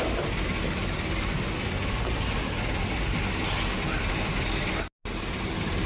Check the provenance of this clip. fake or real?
real